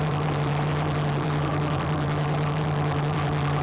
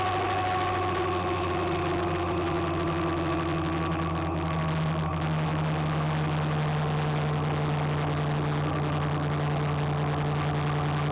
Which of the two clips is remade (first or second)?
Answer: first